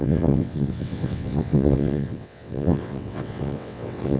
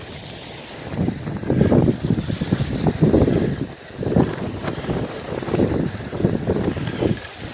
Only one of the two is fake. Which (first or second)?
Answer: first